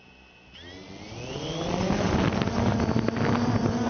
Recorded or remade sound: recorded